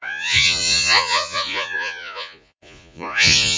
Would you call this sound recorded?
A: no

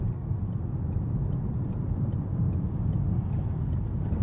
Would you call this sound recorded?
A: yes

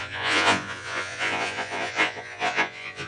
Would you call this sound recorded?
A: no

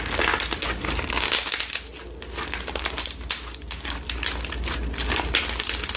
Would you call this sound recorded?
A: yes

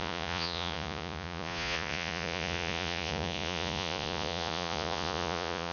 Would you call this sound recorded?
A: no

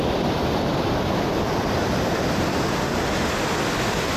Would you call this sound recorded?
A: yes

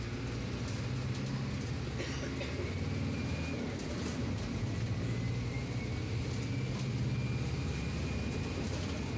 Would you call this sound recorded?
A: yes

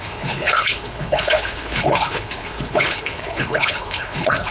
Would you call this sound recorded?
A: no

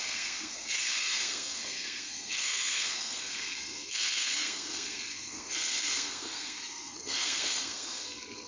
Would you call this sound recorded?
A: no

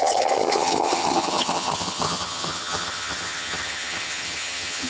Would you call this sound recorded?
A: no